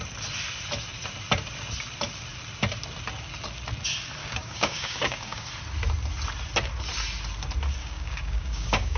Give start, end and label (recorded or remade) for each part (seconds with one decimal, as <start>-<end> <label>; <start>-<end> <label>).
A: 0.0-4.2 recorded; 4.2-5.5 remade; 5.5-7.8 recorded; 7.8-9.0 remade